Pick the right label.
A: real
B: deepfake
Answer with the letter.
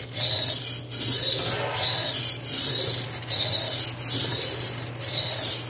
A